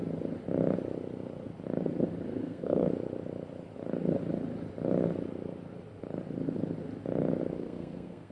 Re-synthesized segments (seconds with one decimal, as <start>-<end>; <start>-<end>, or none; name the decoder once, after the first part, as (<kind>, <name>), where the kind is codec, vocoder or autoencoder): 2.3-2.9 (codec, SNAC); 7.6-8.3